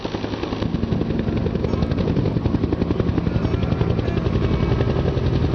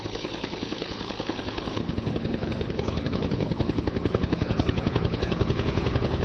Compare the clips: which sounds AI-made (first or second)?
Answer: second